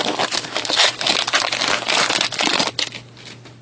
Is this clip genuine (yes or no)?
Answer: yes